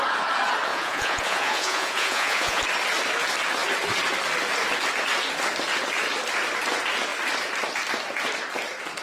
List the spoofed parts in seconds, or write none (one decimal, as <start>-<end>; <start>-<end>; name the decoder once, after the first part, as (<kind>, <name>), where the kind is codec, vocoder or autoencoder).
0.7-2.6 (vocoder, Vocos)